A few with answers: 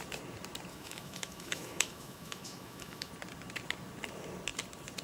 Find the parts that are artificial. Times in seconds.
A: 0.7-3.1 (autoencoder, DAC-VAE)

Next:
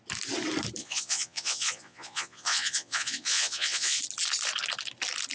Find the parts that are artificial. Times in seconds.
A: 0.8-4.0 (vocoder, Vocos)

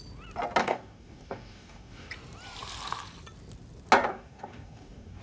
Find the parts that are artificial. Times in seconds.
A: 0.6-2.1 (codec, DAC); 4.1-5.2